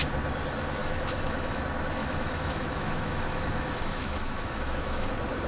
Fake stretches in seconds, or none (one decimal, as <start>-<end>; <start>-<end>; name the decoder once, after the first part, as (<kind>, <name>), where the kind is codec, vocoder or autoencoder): 0.8-1.6 (autoencoder, DAC-VAE); 2.0-5.1